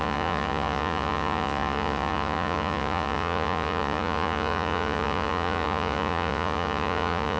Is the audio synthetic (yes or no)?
yes